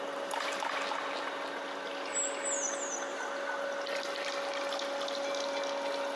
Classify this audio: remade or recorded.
recorded